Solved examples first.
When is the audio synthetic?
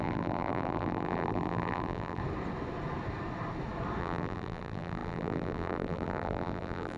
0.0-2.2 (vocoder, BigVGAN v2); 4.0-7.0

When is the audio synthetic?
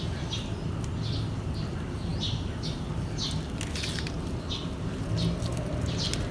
none